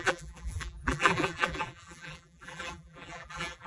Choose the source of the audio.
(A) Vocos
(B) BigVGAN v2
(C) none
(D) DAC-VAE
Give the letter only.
B